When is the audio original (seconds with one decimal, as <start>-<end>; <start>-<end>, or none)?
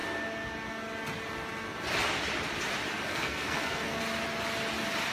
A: 0.0-3.1; 4.0-5.1